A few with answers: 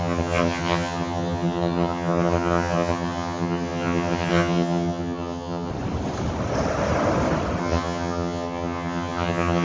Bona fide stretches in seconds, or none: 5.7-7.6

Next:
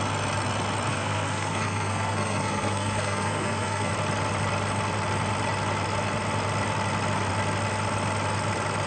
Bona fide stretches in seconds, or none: 0.0-0.9; 3.9-8.9

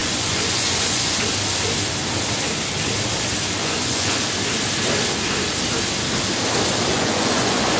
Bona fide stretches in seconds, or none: 1.2-3.6; 4.2-6.9